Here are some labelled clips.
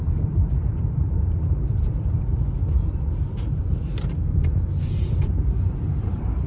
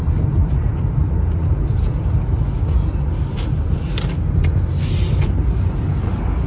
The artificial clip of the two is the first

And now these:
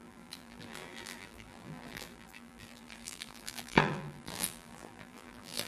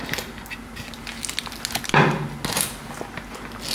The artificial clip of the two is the first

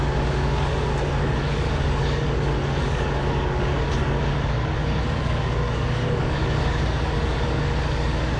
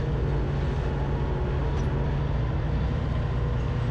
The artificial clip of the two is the first